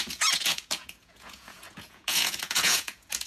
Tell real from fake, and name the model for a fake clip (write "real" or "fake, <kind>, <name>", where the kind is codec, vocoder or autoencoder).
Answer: fake, vocoder, Vocos